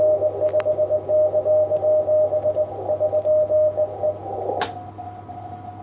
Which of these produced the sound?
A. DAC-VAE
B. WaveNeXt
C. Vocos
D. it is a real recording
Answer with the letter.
D